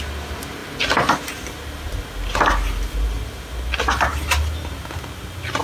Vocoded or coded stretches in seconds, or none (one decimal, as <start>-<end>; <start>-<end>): none